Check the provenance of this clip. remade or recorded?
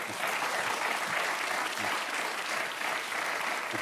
recorded